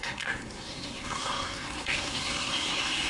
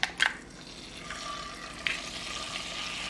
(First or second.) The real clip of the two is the second